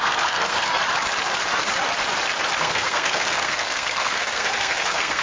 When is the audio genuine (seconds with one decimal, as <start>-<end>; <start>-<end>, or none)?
0.7-2.6